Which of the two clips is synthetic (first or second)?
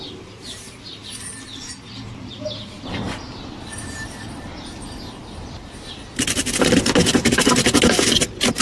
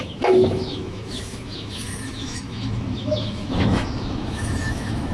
second